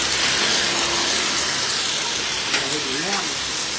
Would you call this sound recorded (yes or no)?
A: yes